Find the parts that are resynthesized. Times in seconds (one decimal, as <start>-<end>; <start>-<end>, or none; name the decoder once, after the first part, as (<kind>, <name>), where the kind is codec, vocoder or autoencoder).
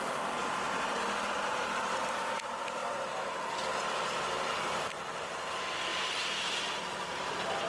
0.0-0.4 (vocoder, BigVGAN v2); 0.9-2.8; 3.6-7.7